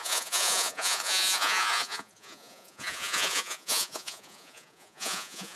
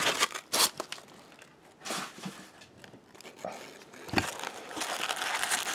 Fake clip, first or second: first